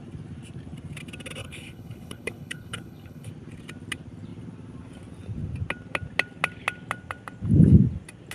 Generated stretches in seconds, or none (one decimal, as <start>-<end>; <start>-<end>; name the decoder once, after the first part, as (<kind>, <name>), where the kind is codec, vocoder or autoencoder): 1.4-3.3 (codec, HILCodec)